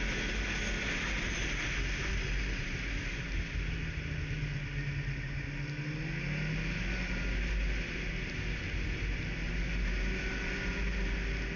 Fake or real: real